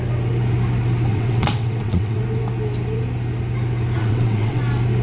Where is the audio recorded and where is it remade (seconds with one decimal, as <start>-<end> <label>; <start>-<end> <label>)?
0.0-1.1 recorded; 1.1-2.2 remade; 2.2-4.0 recorded; 4.0-4.6 remade; 4.6-5.0 recorded